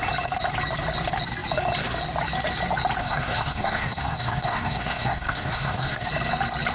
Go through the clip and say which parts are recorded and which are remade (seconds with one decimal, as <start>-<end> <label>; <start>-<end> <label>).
0.0-3.0 recorded; 3.0-6.1 remade; 6.1-6.7 recorded